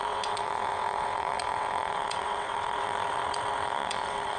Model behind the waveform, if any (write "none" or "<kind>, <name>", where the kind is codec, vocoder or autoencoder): vocoder, WaveNeXt